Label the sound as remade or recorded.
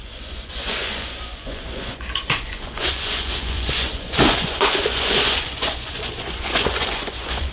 remade